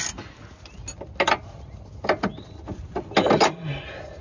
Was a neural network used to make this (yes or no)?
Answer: no